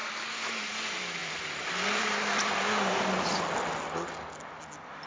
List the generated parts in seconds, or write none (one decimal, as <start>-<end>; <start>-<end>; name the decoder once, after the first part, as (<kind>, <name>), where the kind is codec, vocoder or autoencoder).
0.0-0.6 (vocoder, BigVGAN v2); 1.2-4.3